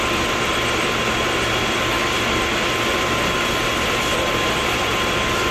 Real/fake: real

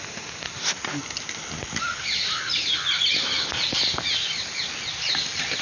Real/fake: real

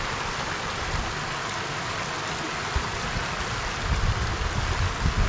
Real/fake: real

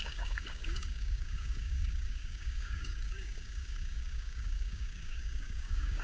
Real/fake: fake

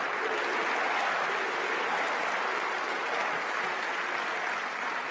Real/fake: real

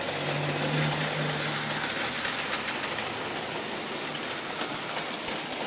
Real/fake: real